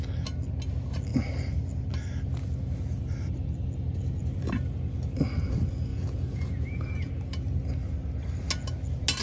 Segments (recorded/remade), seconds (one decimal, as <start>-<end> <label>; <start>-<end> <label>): 0.0-5.9 recorded; 5.9-7.1 remade; 7.1-9.2 recorded